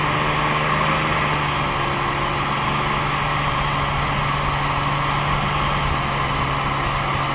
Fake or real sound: real